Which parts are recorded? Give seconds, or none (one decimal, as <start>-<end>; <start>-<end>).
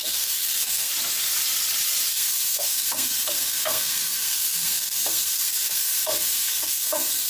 0.9-2.1